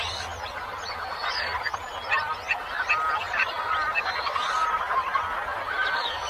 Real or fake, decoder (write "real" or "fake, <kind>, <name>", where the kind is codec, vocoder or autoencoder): real